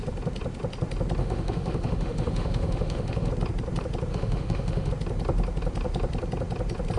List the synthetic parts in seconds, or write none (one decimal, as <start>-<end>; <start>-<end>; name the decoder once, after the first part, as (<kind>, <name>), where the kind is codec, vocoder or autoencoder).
1.2-3.3 (autoencoder, DAC-VAE); 4.1-4.9